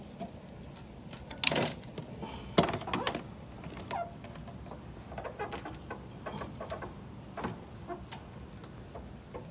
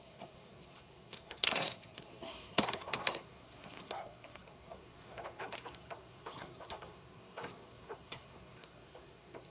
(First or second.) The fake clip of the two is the second